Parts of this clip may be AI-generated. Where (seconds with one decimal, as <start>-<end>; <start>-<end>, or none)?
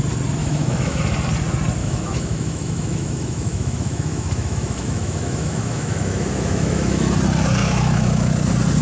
0.4-1.0; 1.8-7.1; 7.6-8.3